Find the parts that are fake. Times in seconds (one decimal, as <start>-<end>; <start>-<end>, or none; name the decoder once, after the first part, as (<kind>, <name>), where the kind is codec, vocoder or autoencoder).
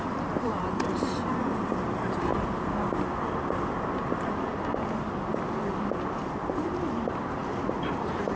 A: 0.0-2.3 (vocoder, BigVGAN v2); 6.5-7.4; 7.9-8.4